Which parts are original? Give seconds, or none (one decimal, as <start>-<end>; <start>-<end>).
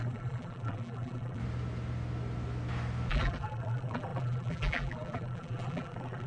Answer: 1.4-3.1